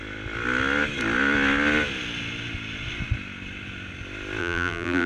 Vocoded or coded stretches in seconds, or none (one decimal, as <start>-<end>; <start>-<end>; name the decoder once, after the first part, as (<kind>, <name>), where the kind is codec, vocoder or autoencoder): 4.4-5.1 (vocoder, BigVGAN v2)